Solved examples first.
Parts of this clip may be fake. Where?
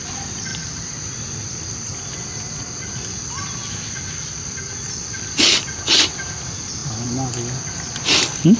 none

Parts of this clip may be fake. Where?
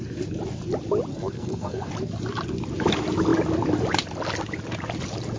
1.1-1.9 (codec, SNAC)